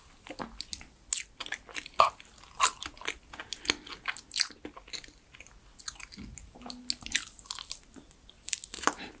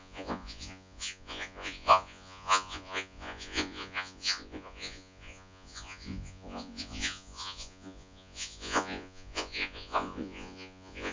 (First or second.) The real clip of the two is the first